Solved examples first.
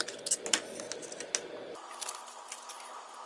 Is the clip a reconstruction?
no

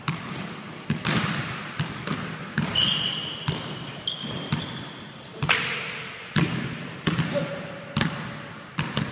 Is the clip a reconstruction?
no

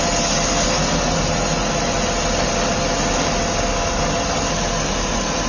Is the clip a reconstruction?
no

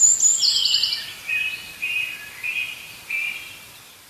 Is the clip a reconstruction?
no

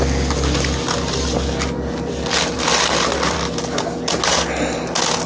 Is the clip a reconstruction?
no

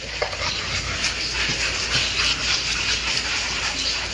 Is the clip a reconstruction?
no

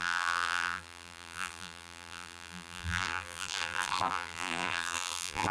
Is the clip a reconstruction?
yes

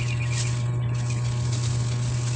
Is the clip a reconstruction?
no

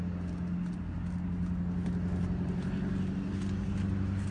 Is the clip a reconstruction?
no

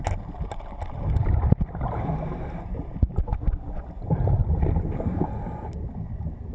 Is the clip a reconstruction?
no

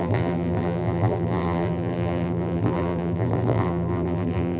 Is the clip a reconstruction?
yes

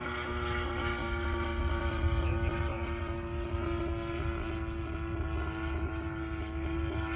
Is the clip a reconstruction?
no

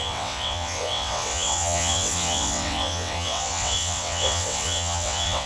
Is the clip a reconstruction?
yes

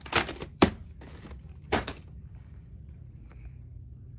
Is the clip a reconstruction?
yes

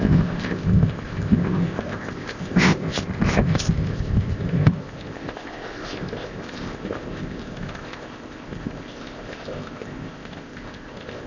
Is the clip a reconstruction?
yes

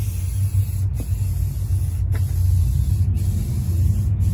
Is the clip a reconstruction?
no